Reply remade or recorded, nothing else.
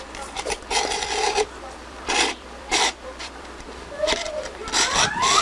remade